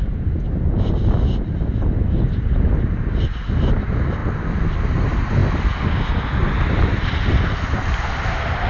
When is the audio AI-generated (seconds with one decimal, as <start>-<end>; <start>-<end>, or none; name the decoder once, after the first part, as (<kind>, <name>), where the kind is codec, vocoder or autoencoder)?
none